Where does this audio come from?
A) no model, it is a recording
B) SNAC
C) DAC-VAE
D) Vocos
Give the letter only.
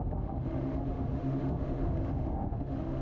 C